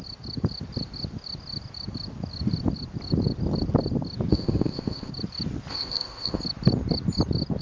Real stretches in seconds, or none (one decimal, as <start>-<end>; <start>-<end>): 0.0-4.3; 5.1-5.7; 6.4-7.6